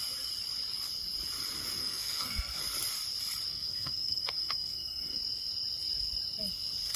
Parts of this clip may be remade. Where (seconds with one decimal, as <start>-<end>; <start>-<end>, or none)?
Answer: 1.8-2.6; 3.5-5.2